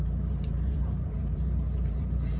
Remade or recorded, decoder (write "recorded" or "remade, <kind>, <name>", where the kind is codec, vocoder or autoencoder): remade, vocoder, BigVGAN v2